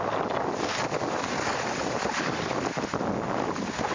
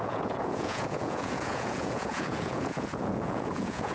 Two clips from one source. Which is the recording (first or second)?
first